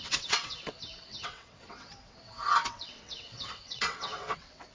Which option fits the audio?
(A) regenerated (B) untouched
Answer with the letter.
A